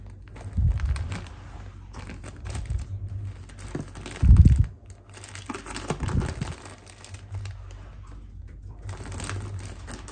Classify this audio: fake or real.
real